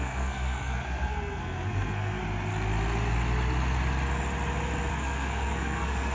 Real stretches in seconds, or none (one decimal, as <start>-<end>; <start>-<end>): 2.2-4.9